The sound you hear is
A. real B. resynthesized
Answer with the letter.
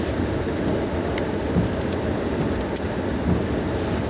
A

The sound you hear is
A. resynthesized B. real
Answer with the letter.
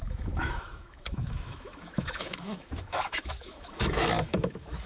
A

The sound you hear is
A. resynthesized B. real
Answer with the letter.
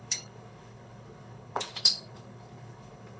A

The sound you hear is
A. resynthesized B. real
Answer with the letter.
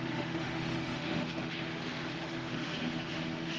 A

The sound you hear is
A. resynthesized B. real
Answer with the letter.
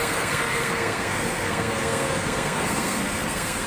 A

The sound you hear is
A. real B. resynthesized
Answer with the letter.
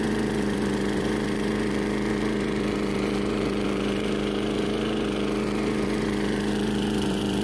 B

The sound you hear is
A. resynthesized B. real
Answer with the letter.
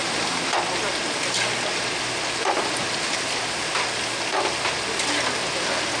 B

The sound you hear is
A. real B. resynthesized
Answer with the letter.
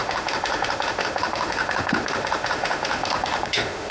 B